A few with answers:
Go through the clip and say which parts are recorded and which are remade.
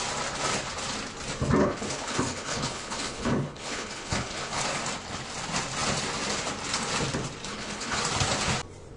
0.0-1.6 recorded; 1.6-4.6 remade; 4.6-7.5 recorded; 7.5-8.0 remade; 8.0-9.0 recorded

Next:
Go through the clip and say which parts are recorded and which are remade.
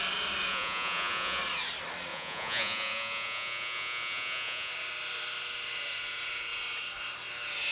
0.0-0.5 recorded; 0.5-1.4 remade; 1.4-2.1 recorded; 2.1-4.7 remade; 4.7-7.7 recorded